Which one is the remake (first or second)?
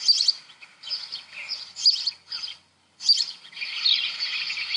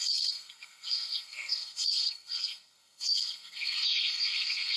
second